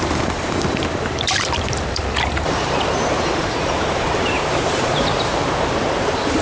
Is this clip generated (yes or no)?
yes